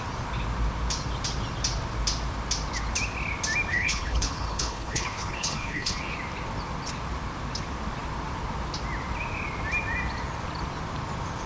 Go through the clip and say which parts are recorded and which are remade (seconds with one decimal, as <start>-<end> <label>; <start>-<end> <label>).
0.0-3.7 recorded; 3.7-6.0 remade; 6.0-11.5 recorded